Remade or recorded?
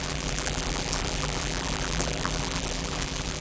remade